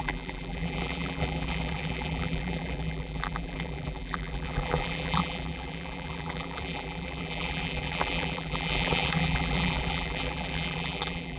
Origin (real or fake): fake